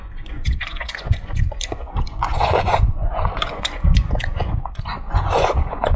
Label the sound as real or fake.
fake